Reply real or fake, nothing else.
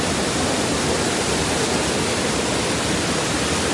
real